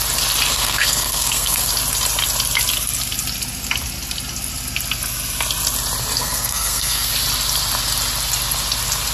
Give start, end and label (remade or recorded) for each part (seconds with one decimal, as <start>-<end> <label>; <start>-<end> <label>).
0.0-0.5 recorded; 0.5-1.7 remade; 1.7-6.2 recorded; 6.2-7.1 remade; 7.1-9.1 recorded